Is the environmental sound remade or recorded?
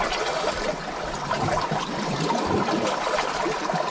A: recorded